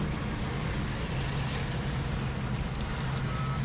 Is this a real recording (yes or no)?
yes